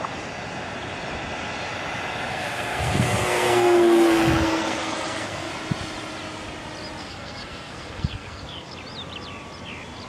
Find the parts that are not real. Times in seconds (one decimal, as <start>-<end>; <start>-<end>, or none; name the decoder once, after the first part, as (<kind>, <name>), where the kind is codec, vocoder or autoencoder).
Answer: 2.3-5.5 (codec, SNAC); 7.0-8.7